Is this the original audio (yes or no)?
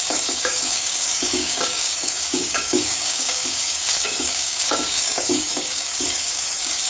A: no